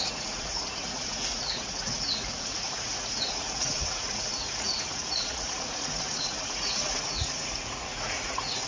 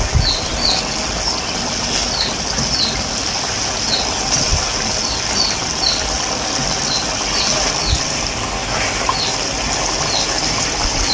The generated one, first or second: first